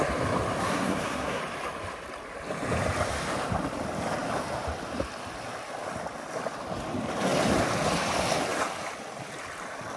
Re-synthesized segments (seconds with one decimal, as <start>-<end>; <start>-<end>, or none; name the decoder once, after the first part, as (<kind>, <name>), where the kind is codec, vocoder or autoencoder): 0.6-1.4 (codec, SNAC)